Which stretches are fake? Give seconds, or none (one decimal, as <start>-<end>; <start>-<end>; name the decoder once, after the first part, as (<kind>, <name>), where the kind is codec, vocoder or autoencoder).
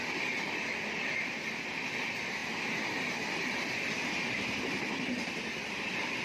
0.0-2.4 (vocoder, BigVGAN v2); 2.9-6.2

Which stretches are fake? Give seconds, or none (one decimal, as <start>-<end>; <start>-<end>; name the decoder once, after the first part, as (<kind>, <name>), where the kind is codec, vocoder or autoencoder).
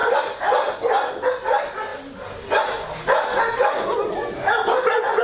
none